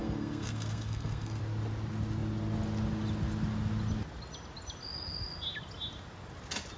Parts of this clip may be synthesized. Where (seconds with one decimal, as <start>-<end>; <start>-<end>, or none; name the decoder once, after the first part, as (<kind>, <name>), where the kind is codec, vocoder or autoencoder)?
0.0-1.4 (codec, SNAC)